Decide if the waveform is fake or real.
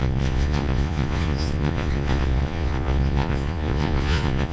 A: fake